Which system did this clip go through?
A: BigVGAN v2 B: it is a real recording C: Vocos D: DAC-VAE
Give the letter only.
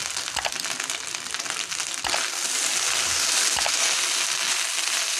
B